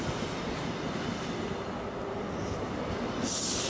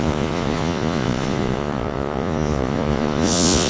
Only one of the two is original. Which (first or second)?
first